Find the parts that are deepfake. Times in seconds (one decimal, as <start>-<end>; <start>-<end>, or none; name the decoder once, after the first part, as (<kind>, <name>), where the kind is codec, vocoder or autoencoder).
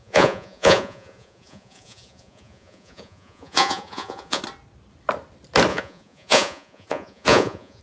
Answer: 0.0-4.4 (vocoder, Vocos); 5.7-7.8